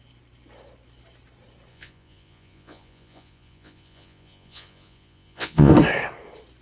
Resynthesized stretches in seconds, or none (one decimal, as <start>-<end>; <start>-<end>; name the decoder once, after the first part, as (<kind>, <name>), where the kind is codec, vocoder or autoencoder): 1.7-5.7 (vocoder, Vocos)